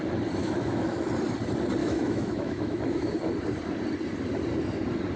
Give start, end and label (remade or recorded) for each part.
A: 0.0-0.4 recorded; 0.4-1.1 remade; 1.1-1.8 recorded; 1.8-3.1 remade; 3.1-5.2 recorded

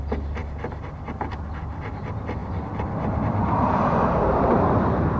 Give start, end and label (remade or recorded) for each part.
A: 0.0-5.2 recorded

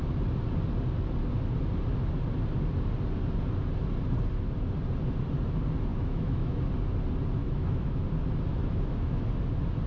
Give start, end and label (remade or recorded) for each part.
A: 0.0-5.9 recorded; 5.9-6.6 remade; 6.6-7.4 recorded; 7.4-8.1 remade; 8.1-8.5 recorded; 8.5-9.3 remade; 9.3-9.9 recorded

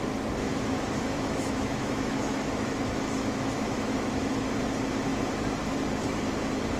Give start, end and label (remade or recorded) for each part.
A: 0.0-0.4 recorded; 0.4-4.5 remade; 4.5-6.8 recorded

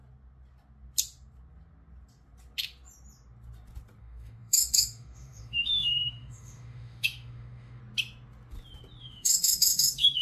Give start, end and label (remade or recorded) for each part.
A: 0.0-4.0 recorded; 4.0-7.8 remade; 7.8-9.0 recorded; 9.0-10.2 remade